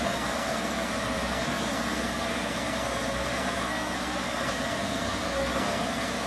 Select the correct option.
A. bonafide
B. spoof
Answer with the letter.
B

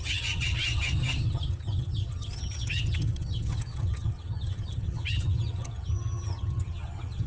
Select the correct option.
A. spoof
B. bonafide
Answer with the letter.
A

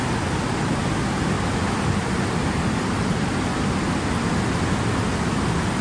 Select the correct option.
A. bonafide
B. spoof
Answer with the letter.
A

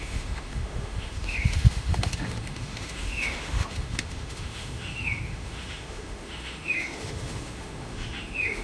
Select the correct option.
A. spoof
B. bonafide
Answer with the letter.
A